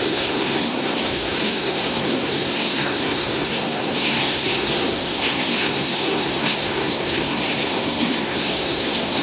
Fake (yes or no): yes